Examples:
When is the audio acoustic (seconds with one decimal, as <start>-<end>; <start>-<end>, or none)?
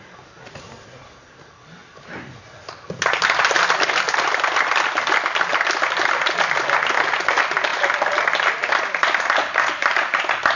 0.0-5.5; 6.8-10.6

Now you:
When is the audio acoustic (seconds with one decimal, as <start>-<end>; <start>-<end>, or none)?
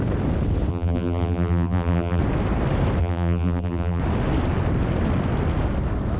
0.0-0.7; 2.2-3.0; 4.0-6.2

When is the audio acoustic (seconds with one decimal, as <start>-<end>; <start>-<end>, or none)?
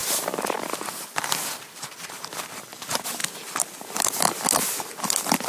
3.2-3.8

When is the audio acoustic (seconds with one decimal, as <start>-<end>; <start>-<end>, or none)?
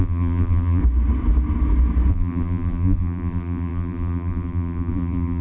0.8-2.1